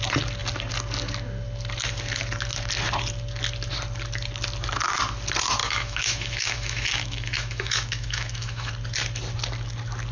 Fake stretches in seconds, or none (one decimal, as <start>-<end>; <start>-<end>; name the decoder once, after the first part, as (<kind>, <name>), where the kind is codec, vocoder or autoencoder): 5.6-8.7 (autoencoder, DAC-VAE)